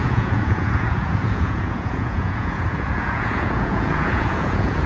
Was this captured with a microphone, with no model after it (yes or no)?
no